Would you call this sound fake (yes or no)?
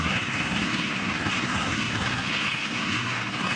yes